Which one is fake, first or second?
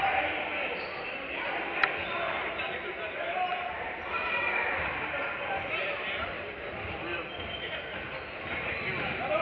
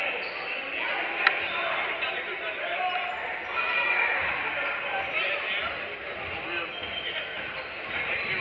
first